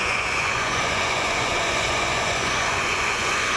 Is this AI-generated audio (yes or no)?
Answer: yes